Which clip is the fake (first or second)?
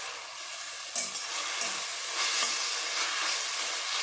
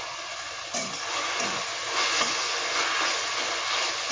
second